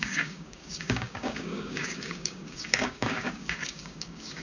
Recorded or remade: remade